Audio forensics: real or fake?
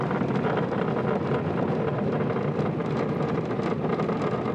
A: real